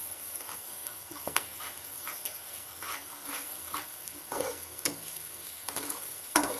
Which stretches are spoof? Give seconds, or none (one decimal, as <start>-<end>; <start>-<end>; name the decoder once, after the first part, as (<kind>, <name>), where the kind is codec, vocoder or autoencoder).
0.0-6.6 (codec, SNAC)